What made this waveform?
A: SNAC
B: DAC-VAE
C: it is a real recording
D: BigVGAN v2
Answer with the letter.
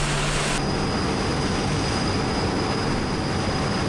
C